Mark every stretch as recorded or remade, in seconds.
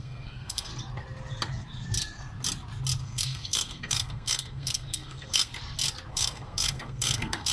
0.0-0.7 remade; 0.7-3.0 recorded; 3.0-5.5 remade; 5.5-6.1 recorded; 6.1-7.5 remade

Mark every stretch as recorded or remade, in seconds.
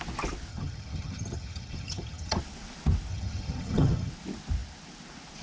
0.0-0.5 recorded; 0.5-2.4 remade; 2.4-3.1 recorded; 3.1-4.1 remade; 4.1-5.4 recorded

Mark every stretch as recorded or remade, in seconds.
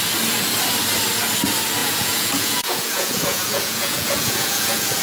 0.0-1.8 recorded; 1.8-5.0 remade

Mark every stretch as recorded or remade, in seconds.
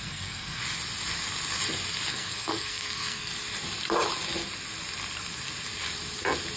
0.0-0.6 remade; 0.6-2.1 recorded; 2.1-3.3 remade; 3.3-6.6 recorded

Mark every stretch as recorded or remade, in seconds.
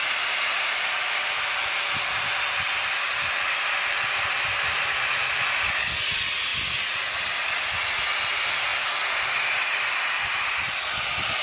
0.0-2.1 remade; 2.1-11.4 recorded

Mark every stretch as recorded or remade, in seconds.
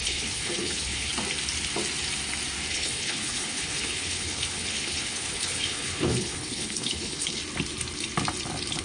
0.0-1.1 remade; 1.1-2.7 recorded; 2.7-7.4 remade; 7.4-8.8 recorded